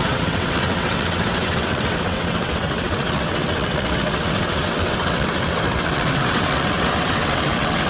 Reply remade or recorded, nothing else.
remade